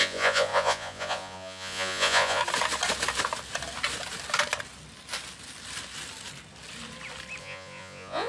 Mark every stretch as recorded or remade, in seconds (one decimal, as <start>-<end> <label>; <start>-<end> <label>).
0.0-2.4 remade; 2.4-7.4 recorded; 7.4-8.3 remade